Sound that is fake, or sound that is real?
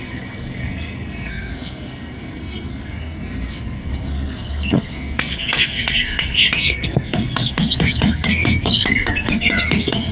fake